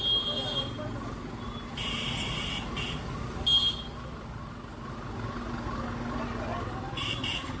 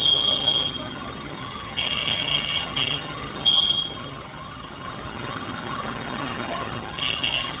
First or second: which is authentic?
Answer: first